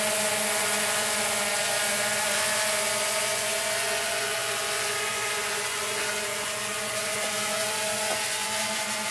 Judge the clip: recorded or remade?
remade